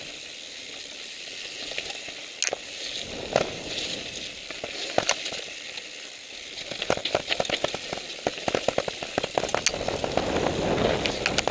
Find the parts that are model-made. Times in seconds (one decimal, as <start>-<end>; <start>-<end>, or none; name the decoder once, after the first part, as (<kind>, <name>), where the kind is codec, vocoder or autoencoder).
none